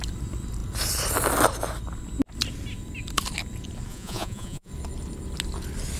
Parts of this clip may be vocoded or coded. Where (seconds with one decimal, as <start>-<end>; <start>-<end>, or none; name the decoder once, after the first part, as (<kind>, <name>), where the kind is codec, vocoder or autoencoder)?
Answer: 3.9-4.7 (vocoder, Vocos)